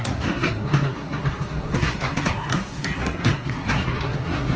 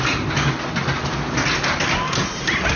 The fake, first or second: first